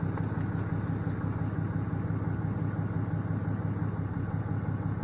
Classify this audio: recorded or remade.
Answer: recorded